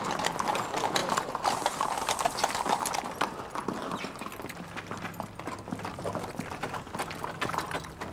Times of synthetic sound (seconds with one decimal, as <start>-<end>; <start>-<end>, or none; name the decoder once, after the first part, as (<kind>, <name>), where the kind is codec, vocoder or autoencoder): 1.0-1.8 (vocoder, BigVGAN v2)

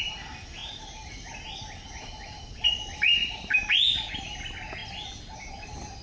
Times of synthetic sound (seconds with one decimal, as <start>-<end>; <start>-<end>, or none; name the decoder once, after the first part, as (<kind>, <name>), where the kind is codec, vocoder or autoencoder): 0.6-1.1 (vocoder, BigVGAN v2); 3.2-4.1

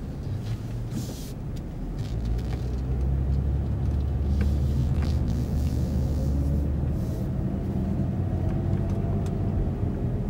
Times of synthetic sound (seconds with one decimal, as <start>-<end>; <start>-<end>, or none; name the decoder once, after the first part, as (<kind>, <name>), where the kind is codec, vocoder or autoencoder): 2.0-2.6 (vocoder, BigVGAN v2); 4.8-6.3

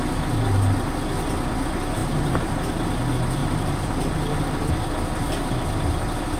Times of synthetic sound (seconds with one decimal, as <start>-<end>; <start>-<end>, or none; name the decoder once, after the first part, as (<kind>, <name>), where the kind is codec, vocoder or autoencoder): 2.0-2.5 (vocoder, BigVGAN v2); 3.4-4.7

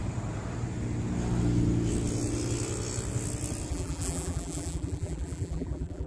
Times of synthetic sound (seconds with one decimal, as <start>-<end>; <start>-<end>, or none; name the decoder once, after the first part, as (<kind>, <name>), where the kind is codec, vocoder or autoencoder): 3.7-6.1 (vocoder, BigVGAN v2)

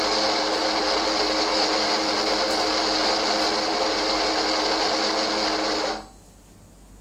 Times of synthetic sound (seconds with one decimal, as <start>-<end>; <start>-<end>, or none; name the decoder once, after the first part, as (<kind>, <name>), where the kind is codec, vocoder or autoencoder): none

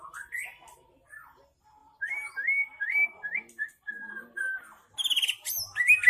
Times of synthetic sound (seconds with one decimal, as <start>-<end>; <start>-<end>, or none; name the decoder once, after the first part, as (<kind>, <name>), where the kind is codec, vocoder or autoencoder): none

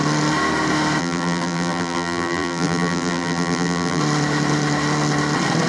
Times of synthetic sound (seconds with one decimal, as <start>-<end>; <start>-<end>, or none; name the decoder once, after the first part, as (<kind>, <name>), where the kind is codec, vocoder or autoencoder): 1.0-4.0 (vocoder, BigVGAN v2)